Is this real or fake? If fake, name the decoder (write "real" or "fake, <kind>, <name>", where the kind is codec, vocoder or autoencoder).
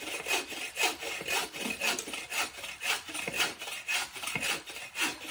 fake, vocoder, BigVGAN v2